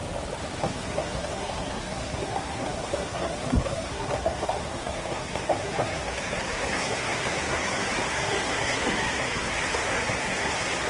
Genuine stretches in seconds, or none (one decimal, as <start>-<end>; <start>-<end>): 0.0-0.6